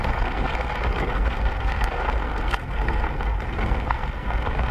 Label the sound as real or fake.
fake